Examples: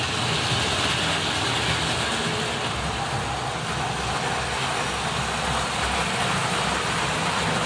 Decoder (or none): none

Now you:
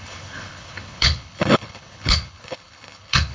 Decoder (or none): codec, HILCodec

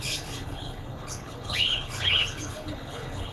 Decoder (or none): codec, HILCodec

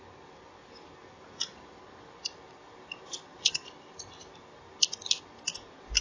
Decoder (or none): none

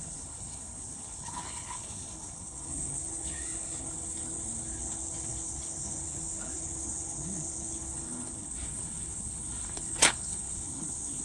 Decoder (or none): codec, HILCodec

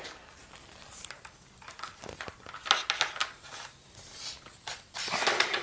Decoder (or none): none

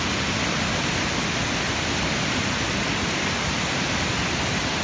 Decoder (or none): none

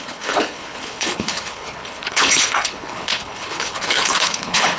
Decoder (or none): codec, HILCodec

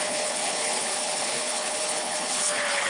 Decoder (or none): codec, HILCodec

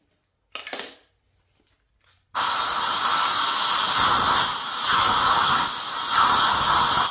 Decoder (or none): none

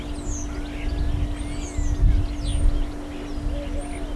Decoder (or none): none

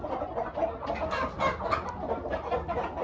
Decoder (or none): none